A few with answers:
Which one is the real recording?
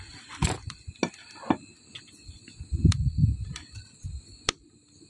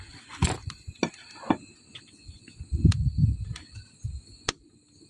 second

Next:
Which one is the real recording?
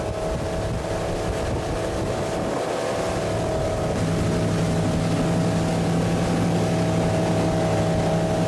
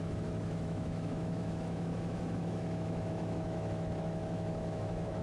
first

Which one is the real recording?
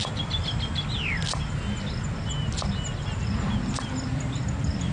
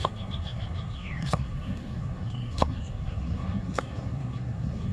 first